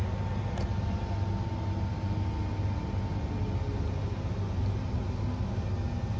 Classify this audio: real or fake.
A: real